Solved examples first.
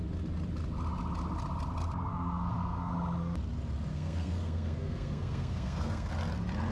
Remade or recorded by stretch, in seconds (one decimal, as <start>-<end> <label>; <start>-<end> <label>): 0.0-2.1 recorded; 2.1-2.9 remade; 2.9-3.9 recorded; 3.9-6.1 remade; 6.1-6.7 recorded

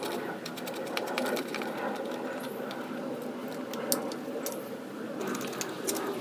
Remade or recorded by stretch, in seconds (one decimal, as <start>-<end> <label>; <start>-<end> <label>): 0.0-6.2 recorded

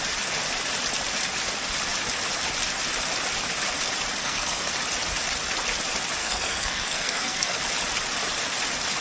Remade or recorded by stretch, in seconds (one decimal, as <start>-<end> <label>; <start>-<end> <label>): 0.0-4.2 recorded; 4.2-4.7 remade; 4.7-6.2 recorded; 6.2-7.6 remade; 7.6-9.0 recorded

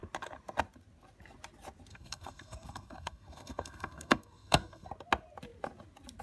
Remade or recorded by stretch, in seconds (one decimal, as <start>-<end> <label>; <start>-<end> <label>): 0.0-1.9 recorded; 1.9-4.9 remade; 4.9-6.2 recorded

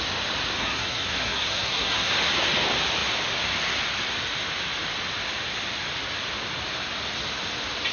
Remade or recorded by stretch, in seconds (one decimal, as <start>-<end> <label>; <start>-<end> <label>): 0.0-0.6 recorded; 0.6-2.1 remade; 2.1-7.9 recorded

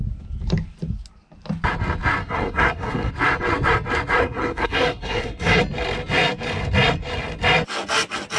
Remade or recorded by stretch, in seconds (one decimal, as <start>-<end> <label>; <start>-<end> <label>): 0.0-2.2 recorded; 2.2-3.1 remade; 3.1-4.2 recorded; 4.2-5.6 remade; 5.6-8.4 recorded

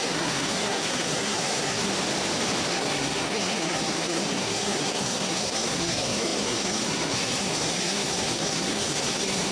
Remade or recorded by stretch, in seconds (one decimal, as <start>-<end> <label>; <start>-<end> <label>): 0.0-1.9 remade; 1.9-2.7 recorded; 2.7-9.5 remade